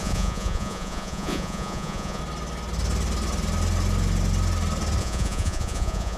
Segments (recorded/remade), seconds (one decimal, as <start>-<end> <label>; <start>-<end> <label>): 0.0-2.2 remade; 2.2-5.0 recorded; 5.0-6.2 remade